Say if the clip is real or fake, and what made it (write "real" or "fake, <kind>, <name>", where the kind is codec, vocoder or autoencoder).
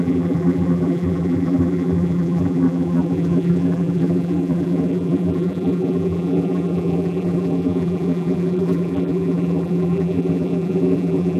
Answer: fake, vocoder, BigVGAN v2